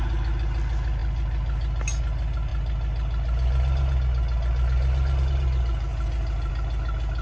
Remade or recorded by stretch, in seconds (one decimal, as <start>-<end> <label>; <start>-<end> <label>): 0.0-7.2 recorded